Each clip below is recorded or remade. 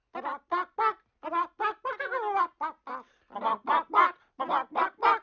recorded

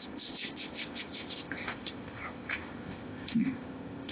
remade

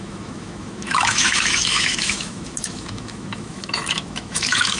remade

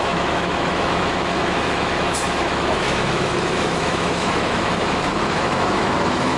remade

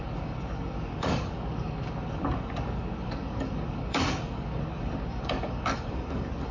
remade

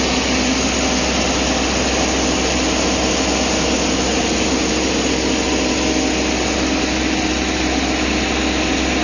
recorded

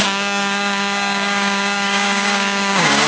remade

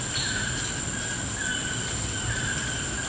recorded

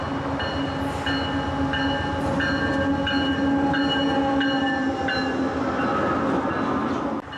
recorded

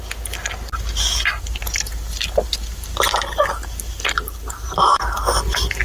recorded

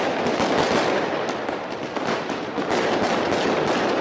recorded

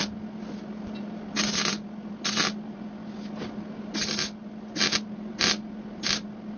recorded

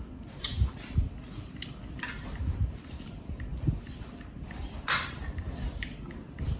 recorded